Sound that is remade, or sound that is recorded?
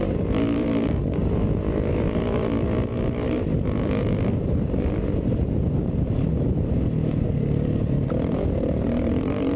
remade